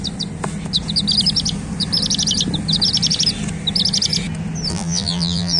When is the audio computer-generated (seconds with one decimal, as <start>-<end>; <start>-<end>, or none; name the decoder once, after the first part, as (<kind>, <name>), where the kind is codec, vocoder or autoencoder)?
4.7-5.6 (vocoder, BigVGAN v2)